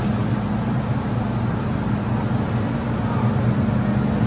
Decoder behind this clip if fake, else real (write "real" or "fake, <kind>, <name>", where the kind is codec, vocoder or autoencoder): real